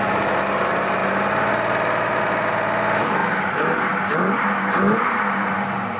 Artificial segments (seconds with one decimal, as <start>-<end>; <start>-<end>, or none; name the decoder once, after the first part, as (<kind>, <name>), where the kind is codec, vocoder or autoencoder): none